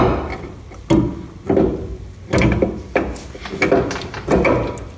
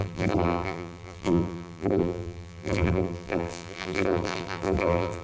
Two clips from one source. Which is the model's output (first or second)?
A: second